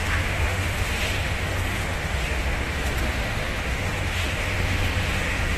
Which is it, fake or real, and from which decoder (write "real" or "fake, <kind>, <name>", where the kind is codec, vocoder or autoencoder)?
fake, autoencoder, DAC-VAE